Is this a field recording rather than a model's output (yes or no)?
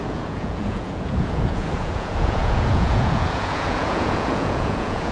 no